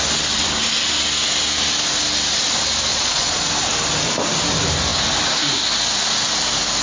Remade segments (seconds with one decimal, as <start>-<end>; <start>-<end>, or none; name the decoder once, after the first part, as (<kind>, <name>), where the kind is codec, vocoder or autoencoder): 2.9-3.5 (vocoder, Vocos)